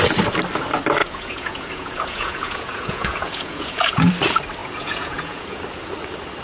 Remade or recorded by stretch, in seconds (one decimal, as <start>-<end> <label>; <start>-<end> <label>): 0.0-1.0 recorded; 1.0-4.1 remade; 4.1-4.6 recorded; 4.6-5.6 remade; 5.6-6.4 recorded